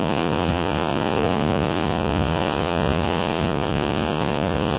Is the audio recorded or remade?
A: remade